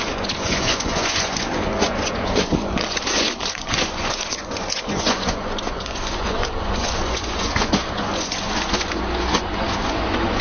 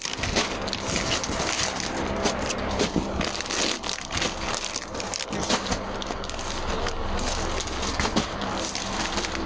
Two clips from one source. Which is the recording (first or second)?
second